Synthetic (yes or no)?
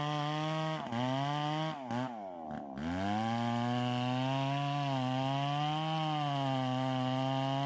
no